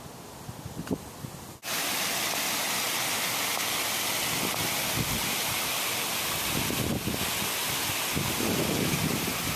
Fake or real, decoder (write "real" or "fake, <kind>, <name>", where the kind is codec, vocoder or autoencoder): real